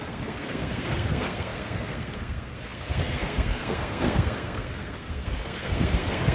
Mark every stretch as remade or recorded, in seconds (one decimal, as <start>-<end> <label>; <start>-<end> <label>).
0.0-6.3 remade

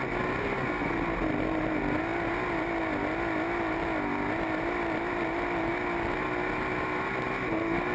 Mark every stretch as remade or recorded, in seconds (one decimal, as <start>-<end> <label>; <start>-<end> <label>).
0.0-7.9 recorded

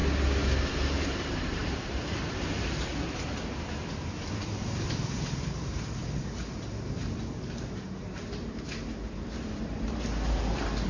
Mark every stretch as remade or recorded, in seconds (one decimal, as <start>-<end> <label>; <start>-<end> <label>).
0.0-0.7 recorded; 0.7-2.9 remade; 2.9-4.5 recorded; 4.5-6.0 remade; 6.0-7.4 recorded; 7.4-10.9 remade

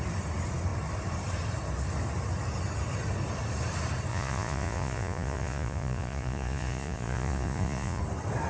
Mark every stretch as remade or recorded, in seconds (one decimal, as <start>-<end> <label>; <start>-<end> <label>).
0.0-4.1 recorded; 4.1-8.0 remade; 8.0-8.5 recorded

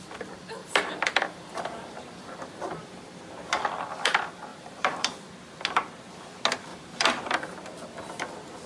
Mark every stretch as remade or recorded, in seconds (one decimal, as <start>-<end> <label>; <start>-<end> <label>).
0.0-0.6 recorded; 0.6-2.9 remade; 2.9-4.5 recorded; 4.5-5.3 remade; 5.3-6.7 recorded; 6.7-7.9 remade; 7.9-8.7 recorded

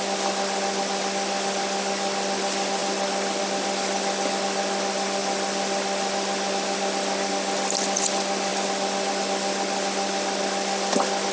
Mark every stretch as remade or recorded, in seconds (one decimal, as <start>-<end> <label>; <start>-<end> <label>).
0.0-11.3 recorded

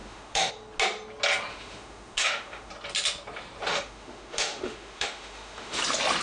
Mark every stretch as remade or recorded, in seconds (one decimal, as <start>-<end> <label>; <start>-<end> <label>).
0.0-0.5 remade; 0.5-1.5 recorded; 1.5-2.7 remade; 2.7-3.7 recorded; 3.7-5.8 remade; 5.8-6.2 recorded